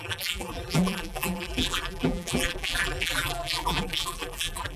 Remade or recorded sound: remade